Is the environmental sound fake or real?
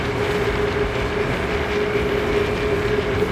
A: real